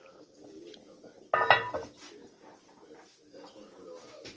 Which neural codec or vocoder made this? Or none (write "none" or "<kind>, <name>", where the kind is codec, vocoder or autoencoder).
none